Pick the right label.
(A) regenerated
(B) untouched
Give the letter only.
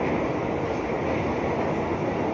B